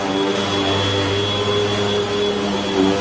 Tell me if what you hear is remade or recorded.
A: recorded